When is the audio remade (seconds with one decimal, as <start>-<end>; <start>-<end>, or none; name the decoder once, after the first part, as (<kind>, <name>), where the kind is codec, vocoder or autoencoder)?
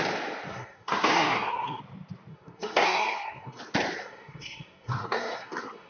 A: 0.5-1.8 (codec, SNAC); 2.3-3.6; 4.0-5.9